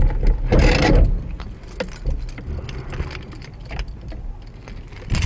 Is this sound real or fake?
real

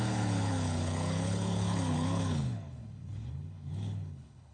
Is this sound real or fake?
fake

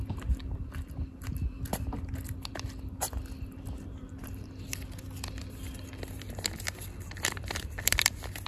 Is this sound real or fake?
real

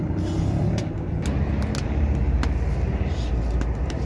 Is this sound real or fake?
real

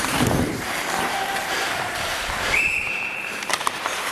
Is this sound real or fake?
fake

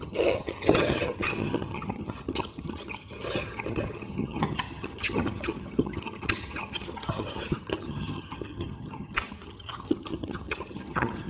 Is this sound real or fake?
fake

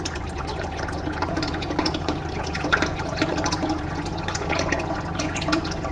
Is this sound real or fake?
fake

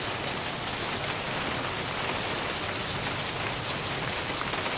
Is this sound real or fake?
real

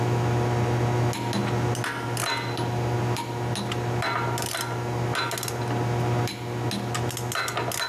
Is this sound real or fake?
real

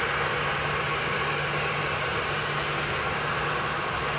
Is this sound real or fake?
real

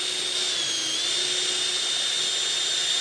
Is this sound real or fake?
real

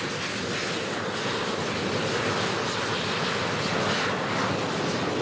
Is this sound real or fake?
real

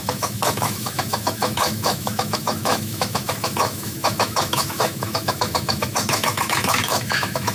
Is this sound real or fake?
fake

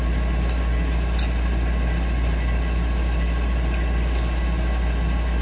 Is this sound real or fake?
real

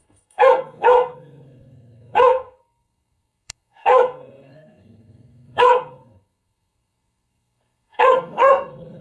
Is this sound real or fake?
fake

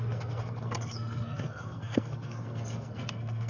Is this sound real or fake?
fake